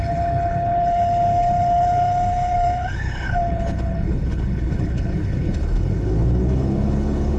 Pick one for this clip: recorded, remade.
remade